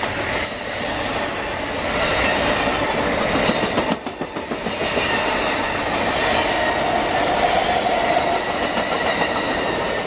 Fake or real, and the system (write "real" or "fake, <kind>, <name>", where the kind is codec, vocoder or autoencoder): real